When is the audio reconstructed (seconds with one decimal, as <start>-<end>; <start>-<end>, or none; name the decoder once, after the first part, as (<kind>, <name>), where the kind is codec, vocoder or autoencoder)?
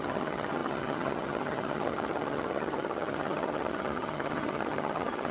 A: 0.0-5.3 (vocoder, HiFi-GAN)